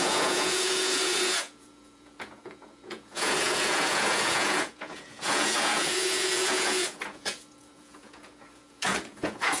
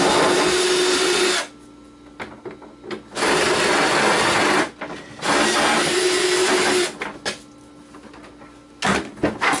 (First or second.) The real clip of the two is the second